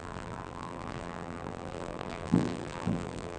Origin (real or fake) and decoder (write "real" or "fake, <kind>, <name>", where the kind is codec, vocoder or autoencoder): fake, vocoder, BigVGAN v2